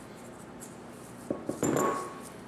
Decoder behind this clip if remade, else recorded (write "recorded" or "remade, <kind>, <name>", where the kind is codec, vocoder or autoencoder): recorded